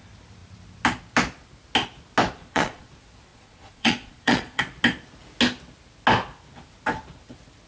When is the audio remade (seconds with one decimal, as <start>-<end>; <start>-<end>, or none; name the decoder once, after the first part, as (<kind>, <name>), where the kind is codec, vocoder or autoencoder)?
2.4-2.9 (vocoder, Vocos); 3.3-4.6